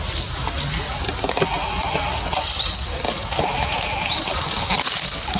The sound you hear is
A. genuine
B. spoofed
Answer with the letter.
A